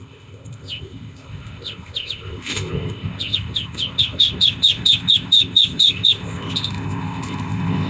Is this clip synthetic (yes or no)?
yes